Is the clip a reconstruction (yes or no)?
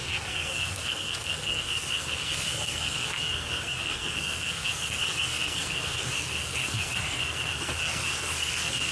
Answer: yes